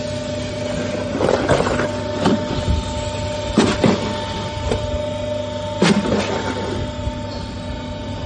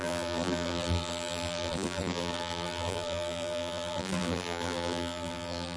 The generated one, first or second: second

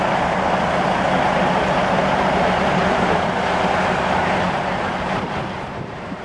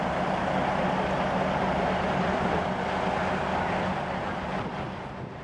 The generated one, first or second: first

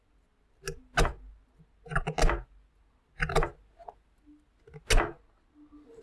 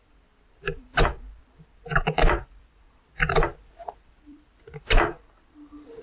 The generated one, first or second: second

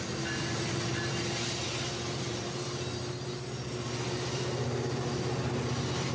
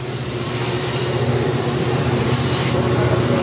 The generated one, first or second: second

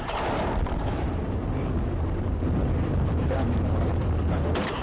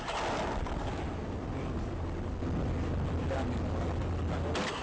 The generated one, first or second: first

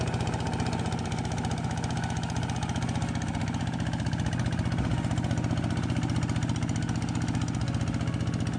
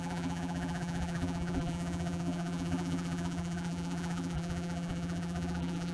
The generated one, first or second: second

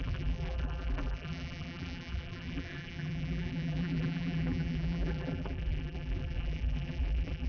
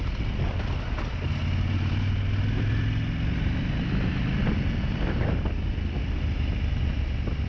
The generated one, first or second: first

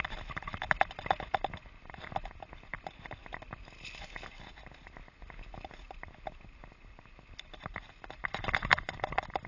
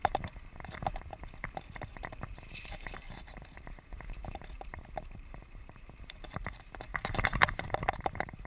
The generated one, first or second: second